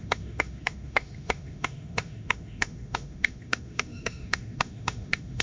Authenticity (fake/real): fake